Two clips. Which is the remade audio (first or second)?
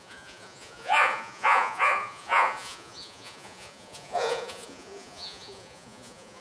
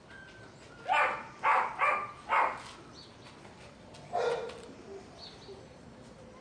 first